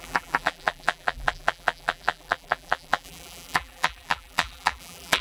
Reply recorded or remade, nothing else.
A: remade